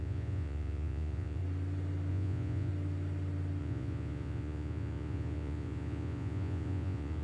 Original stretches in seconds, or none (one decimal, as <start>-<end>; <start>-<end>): 1.4-2.1; 2.7-3.6